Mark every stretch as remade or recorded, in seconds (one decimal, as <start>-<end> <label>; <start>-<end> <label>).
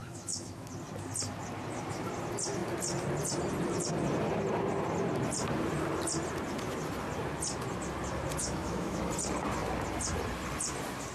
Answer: 0.0-0.7 remade; 0.7-8.4 recorded; 8.4-9.1 remade; 9.1-11.1 recorded